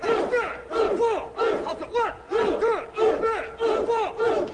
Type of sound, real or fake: real